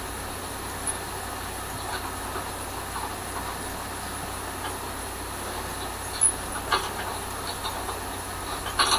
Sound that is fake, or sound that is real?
real